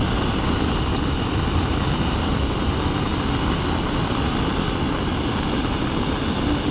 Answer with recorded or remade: recorded